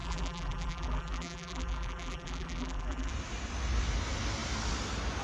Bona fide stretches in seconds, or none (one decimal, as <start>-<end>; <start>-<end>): 3.1-5.2